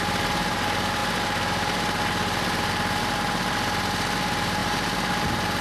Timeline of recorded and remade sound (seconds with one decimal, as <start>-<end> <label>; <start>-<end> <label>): 0.0-5.6 recorded